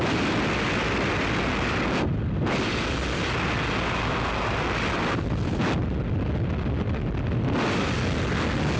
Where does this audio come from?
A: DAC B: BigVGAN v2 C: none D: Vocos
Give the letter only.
C